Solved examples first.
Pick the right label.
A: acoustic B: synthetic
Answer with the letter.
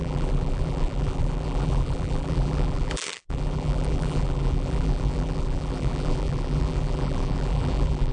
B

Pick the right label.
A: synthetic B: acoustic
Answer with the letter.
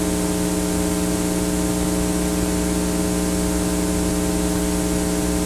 B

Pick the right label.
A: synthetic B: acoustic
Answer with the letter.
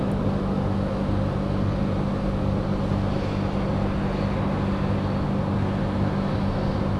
B